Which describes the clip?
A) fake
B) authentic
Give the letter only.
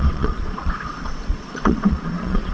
A